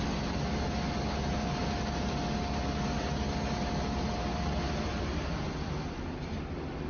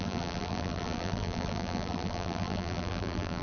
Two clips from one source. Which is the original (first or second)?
first